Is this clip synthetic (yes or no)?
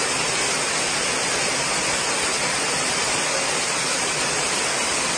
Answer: no